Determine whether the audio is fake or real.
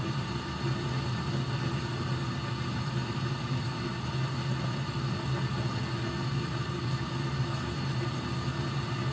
real